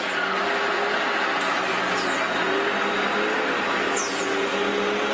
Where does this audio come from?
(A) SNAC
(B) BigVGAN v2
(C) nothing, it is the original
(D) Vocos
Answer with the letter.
C